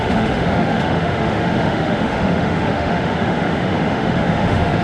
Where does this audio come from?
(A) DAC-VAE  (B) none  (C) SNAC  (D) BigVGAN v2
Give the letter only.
A